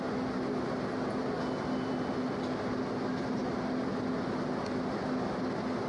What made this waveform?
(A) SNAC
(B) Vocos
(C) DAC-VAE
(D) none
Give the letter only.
D